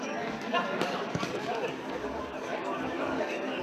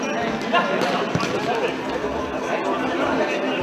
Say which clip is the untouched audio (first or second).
second